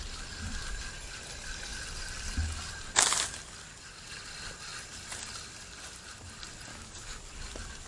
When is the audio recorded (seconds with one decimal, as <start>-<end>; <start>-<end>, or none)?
0.0-6.7; 7.2-7.9